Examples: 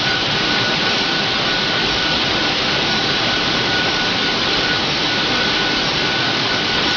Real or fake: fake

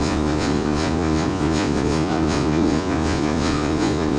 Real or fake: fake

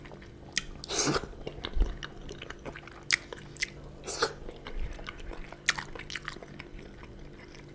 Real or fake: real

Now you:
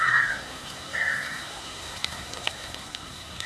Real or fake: fake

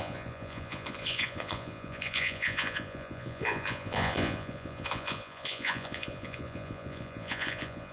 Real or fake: fake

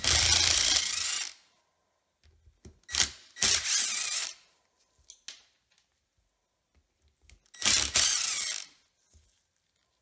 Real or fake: real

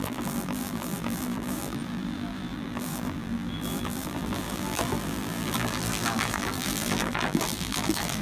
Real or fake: fake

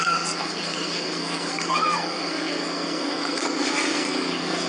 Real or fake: fake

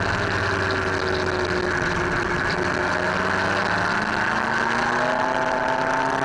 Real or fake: real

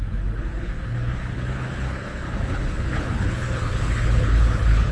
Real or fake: fake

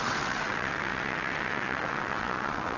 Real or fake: fake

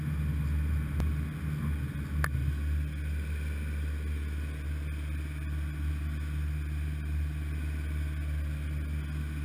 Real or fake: real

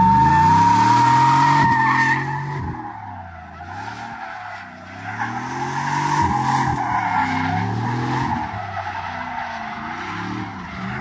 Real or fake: real